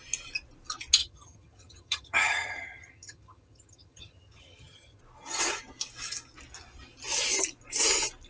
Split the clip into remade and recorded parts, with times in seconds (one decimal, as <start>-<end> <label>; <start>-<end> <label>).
0.0-1.0 recorded; 1.0-5.0 remade; 5.0-8.3 recorded